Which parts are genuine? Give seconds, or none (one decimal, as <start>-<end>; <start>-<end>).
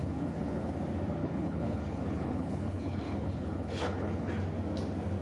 0.7-1.2; 4.3-5.2